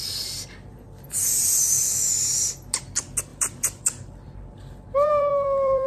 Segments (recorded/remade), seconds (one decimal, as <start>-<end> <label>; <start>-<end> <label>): 0.0-3.3 recorded; 3.3-5.9 remade

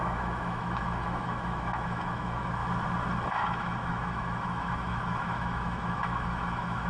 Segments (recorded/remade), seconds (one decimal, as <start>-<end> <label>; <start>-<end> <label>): 0.0-2.6 remade; 2.6-3.3 recorded; 3.3-6.9 remade

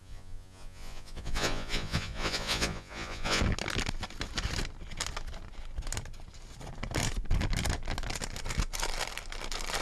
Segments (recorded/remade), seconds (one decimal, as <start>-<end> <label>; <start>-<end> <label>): 0.0-3.4 remade; 3.4-9.8 recorded

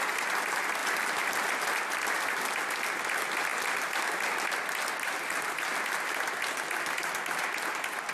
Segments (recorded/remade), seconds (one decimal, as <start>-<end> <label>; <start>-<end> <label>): 0.0-8.1 recorded